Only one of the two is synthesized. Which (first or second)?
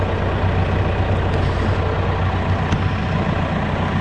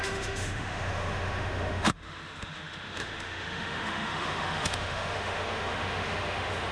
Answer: second